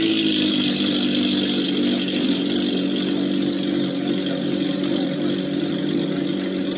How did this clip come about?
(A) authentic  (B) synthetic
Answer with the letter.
A